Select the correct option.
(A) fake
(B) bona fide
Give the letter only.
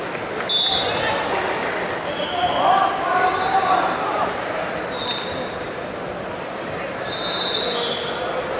B